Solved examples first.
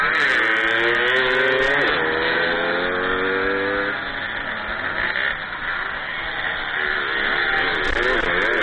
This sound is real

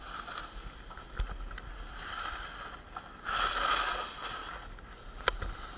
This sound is real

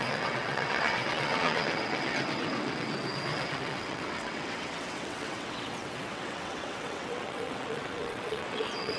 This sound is fake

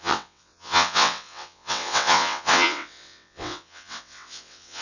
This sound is fake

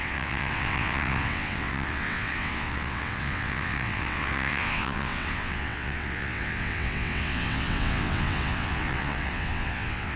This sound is fake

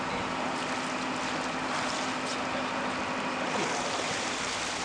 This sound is real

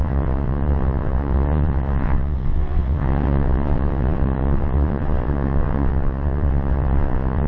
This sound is fake